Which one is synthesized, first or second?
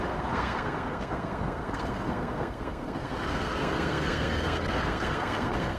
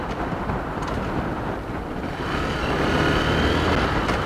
first